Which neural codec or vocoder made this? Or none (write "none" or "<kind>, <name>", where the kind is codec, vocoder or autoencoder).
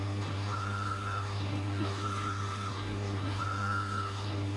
codec, SNAC